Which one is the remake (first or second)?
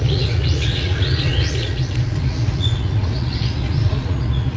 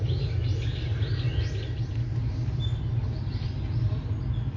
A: first